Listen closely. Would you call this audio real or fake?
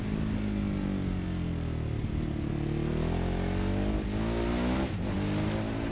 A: real